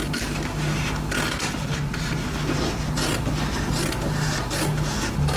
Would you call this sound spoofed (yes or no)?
no